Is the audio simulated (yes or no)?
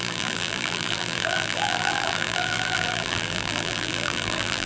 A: yes